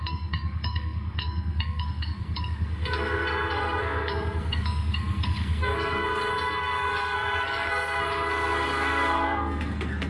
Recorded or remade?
remade